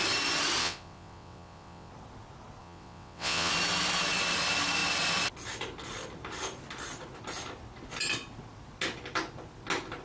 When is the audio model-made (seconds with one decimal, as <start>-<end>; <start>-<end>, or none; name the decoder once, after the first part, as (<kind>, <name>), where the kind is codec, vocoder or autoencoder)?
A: 0.6-1.9 (vocoder, WaveNeXt); 2.6-3.5